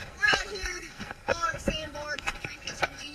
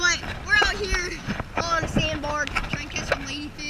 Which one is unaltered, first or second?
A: second